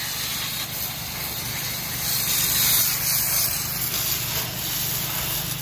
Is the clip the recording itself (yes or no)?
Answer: yes